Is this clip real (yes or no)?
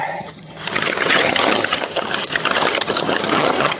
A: no